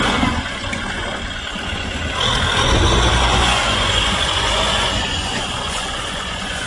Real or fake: fake